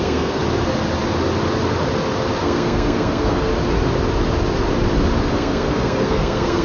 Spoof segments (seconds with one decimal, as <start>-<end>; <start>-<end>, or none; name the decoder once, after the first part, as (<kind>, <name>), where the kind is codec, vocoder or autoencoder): 0.0-0.4 (codec, SNAC); 2.4-3.5; 5.2-6.6